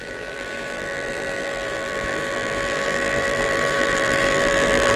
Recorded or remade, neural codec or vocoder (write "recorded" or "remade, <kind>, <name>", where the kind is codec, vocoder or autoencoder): remade, vocoder, BigVGAN v2